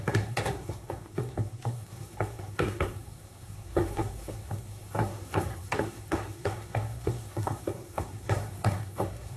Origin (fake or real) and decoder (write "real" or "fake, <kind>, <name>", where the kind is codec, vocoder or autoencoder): fake, codec, SNAC